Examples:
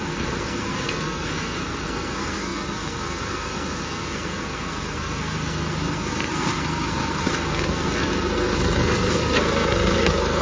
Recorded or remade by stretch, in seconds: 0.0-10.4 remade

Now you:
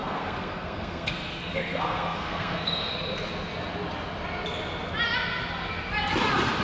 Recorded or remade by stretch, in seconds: 0.0-2.9 remade; 2.9-6.6 recorded

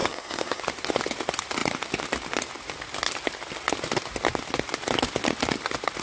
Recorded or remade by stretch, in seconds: 0.0-0.6 remade; 0.6-6.0 recorded

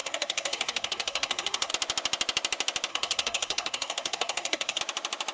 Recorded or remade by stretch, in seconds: 0.0-1.7 remade; 1.7-2.9 recorded; 2.9-4.8 remade; 4.8-5.3 recorded

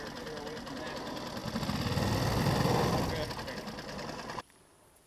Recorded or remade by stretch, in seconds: 0.0-5.1 recorded

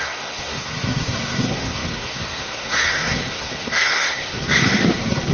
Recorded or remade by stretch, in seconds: 0.0-5.3 remade

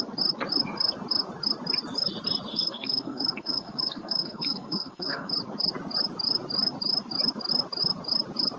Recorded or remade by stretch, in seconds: 0.0-2.5 recorded; 2.5-5.3 remade; 5.3-8.6 recorded